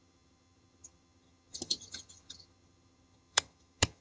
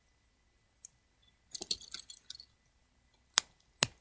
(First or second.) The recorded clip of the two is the second